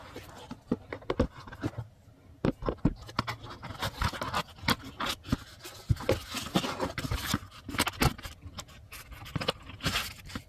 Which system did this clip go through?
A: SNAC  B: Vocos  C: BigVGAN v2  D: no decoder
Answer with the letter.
D